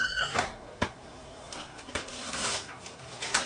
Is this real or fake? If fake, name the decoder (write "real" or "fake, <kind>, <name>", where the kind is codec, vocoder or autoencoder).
fake, codec, SNAC